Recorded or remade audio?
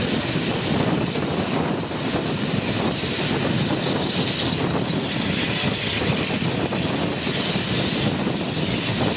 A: recorded